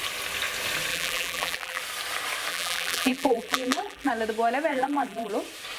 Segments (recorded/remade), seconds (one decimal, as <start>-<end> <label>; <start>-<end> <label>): 0.0-0.9 recorded; 0.9-1.8 remade; 1.8-2.5 recorded; 2.5-4.1 remade; 4.1-4.7 recorded; 4.7-5.3 remade; 5.3-5.8 recorded

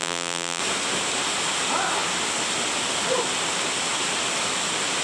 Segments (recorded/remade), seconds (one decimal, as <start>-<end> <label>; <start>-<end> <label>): 0.0-0.6 remade; 0.6-5.0 recorded